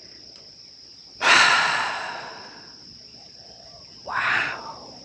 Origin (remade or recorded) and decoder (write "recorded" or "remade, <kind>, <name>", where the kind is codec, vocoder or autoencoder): remade, vocoder, Vocos